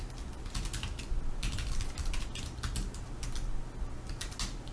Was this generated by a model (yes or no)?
no